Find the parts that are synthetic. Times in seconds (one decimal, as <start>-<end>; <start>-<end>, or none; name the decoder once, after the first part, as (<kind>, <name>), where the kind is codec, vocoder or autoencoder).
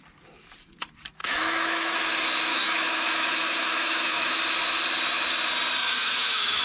1.2-2.0 (autoencoder, DAC-VAE); 2.5-4.4; 5.8-6.6